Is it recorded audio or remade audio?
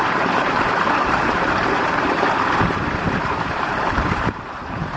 remade